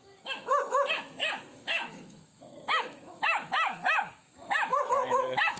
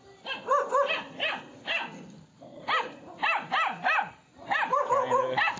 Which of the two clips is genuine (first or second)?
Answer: second